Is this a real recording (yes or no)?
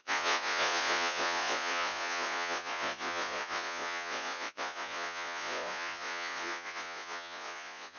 no